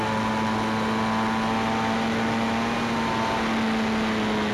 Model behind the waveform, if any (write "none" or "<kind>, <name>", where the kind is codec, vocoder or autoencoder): none